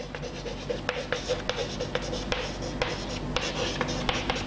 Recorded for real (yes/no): yes